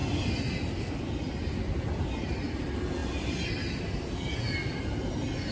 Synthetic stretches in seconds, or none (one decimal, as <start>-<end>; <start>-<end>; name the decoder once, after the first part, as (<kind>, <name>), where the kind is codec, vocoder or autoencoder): none